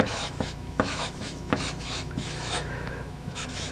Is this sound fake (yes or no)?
yes